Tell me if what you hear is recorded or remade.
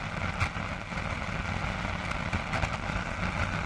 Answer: recorded